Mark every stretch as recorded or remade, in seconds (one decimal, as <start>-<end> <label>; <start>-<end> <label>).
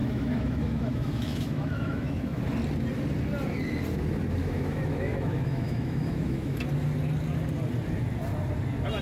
0.0-2.4 remade; 2.4-4.4 recorded; 4.4-6.6 remade; 6.6-9.0 recorded